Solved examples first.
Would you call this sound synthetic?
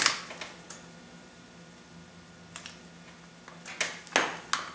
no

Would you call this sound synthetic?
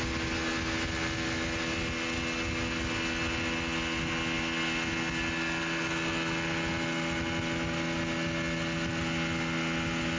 no